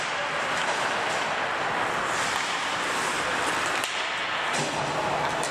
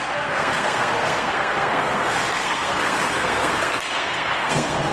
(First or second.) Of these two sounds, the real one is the first